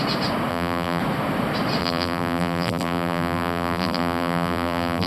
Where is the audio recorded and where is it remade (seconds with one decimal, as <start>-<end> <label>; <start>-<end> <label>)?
0.0-0.5 recorded; 0.5-1.0 remade; 1.0-1.8 recorded; 1.8-5.1 remade